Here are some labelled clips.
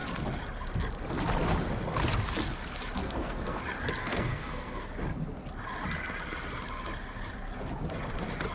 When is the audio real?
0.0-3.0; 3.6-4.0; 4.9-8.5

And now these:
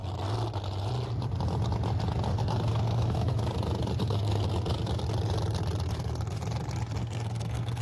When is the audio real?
0.0-2.3; 3.3-4.0; 4.5-7.0

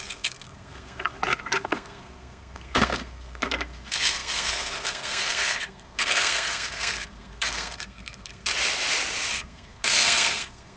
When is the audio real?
8.5-9.3